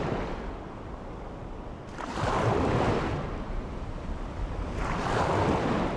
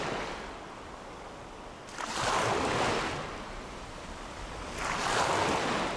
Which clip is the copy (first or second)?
first